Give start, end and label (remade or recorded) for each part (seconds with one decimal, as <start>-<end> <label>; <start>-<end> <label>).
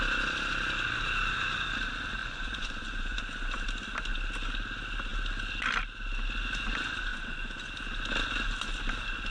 0.0-2.2 recorded; 2.2-3.2 remade; 3.2-7.1 recorded; 7.1-7.7 remade; 7.7-9.3 recorded